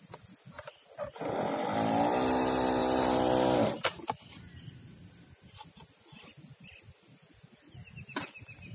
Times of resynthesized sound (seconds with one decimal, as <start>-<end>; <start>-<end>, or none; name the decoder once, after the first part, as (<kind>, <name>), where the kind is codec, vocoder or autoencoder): none